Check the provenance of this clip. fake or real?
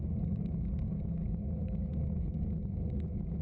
fake